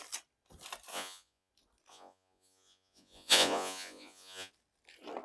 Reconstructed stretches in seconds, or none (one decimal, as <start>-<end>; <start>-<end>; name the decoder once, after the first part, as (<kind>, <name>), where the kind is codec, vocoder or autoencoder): 0.9-1.5 (vocoder, Vocos); 1.9-4.5